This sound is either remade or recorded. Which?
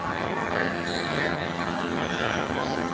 remade